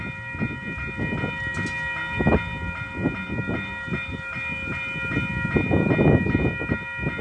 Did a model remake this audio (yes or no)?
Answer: no